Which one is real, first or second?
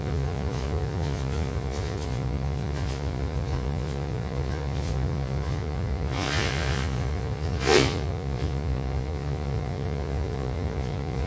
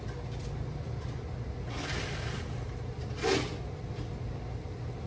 second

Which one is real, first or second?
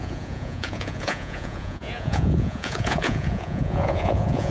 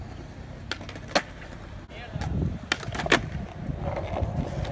second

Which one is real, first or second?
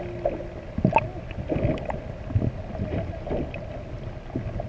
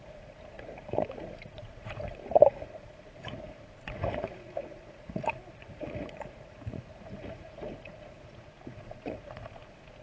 first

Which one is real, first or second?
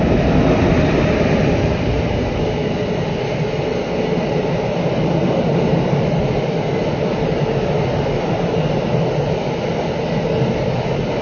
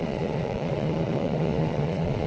first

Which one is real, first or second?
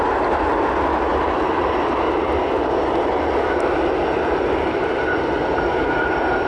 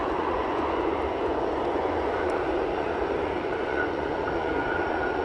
first